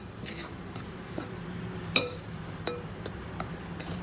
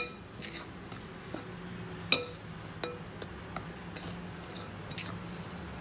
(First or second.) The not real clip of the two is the first